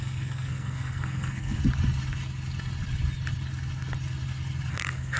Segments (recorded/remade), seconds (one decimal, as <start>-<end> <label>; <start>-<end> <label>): 0.0-1.6 remade; 1.6-4.7 recorded; 4.7-5.2 remade